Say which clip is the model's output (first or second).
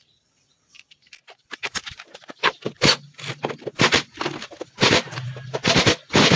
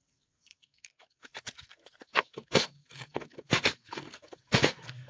second